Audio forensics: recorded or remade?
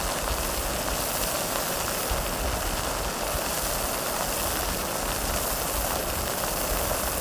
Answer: recorded